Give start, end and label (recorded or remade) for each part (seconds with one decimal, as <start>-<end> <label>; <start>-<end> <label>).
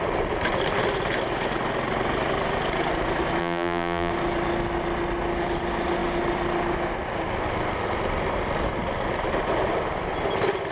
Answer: 0.0-3.4 recorded; 3.4-4.1 remade; 4.1-10.7 recorded